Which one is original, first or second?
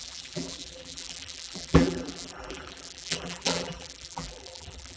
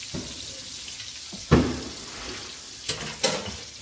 second